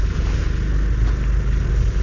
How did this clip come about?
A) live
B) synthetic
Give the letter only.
A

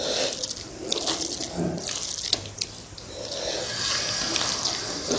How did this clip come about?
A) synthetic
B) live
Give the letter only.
B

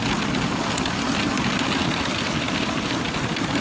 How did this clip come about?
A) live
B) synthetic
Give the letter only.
A